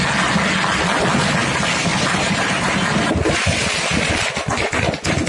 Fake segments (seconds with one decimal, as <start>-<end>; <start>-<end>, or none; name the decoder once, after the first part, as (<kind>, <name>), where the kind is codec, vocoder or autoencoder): 1.9-4.1 (vocoder, BigVGAN v2)